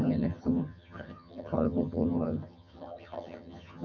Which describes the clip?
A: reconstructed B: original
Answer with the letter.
A